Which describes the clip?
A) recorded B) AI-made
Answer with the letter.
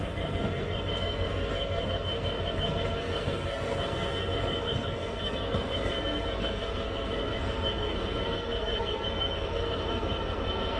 B